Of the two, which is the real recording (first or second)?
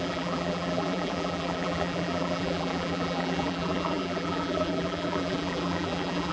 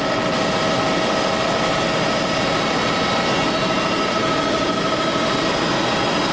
second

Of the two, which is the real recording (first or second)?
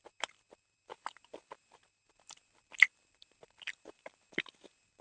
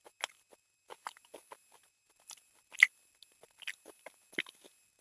second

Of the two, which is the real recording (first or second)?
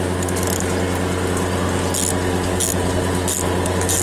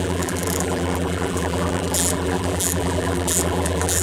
first